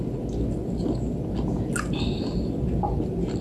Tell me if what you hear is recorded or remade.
recorded